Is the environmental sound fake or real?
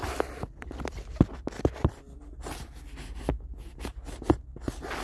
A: real